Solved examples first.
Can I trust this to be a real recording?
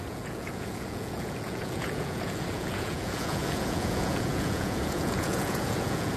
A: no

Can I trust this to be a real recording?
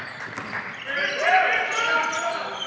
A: yes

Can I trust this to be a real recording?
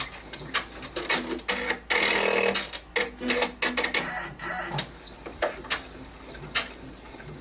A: yes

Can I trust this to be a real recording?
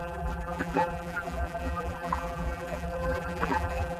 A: no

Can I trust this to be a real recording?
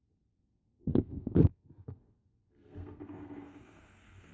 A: no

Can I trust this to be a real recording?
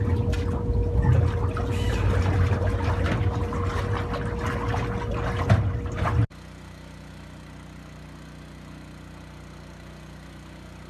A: yes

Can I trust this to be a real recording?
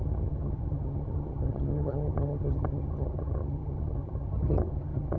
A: no